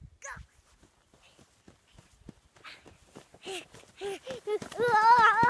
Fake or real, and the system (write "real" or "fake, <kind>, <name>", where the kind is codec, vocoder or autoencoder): real